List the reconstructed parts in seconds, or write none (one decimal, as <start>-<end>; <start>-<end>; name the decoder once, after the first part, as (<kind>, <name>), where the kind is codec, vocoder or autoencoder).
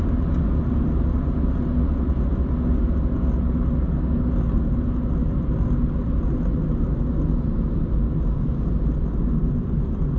none